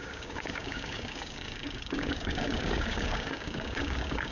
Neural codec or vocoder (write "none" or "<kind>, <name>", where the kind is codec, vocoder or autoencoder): codec, DAC